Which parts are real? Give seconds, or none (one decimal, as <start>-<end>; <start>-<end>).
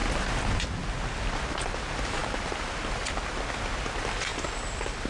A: 0.0-5.1